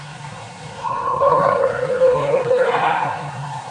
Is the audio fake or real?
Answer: fake